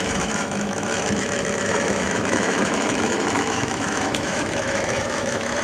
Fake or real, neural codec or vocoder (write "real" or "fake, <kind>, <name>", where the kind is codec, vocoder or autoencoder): fake, autoencoder, DAC-VAE